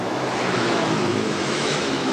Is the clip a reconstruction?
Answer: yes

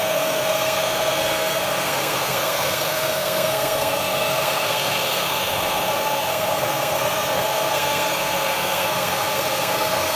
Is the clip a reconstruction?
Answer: yes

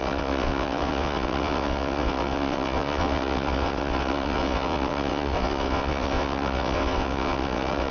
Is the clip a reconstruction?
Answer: yes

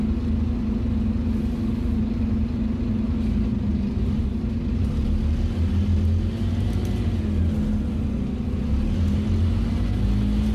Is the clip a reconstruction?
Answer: no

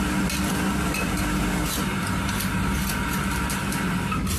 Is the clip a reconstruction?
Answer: no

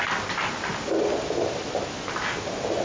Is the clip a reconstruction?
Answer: no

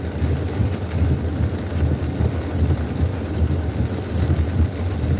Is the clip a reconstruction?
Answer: no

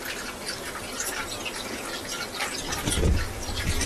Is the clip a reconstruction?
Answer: no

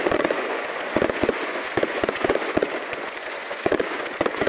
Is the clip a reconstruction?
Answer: yes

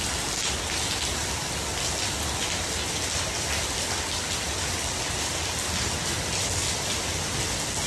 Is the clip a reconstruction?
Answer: no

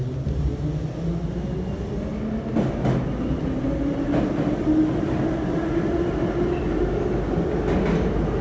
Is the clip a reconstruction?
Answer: no